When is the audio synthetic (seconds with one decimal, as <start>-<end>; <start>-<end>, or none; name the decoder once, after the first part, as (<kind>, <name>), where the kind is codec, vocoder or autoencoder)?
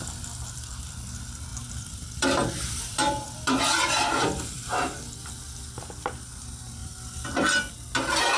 1.5-5.3 (vocoder, BigVGAN v2); 6.8-7.7